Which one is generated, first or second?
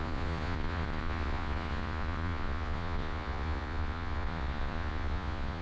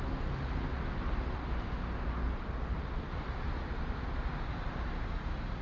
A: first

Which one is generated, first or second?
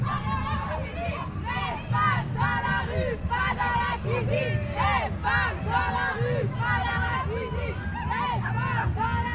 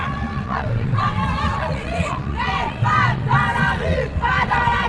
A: second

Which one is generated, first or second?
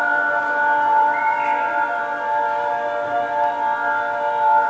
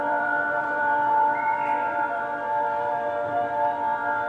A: second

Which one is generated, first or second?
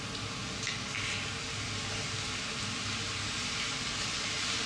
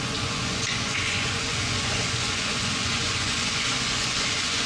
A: second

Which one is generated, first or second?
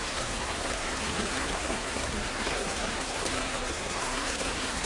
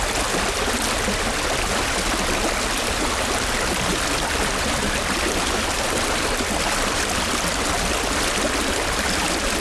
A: first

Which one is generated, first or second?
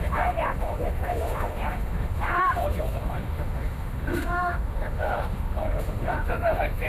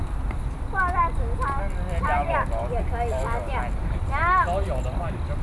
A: first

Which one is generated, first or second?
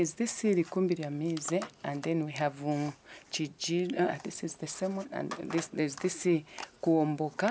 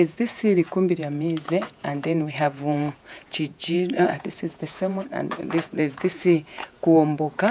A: second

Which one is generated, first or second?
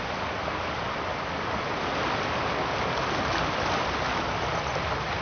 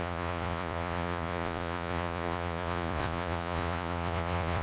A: second